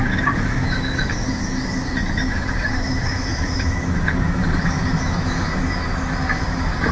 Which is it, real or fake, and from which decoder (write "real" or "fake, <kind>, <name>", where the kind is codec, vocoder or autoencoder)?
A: fake, autoencoder, DAC-VAE